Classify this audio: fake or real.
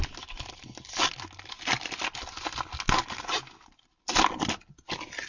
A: real